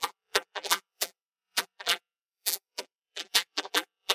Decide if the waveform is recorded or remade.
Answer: remade